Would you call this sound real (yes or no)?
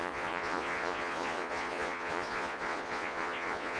no